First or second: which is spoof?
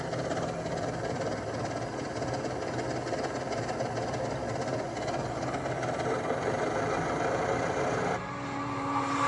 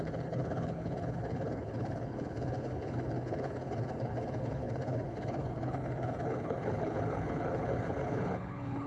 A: second